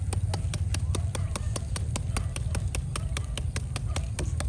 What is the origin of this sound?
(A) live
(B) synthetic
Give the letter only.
A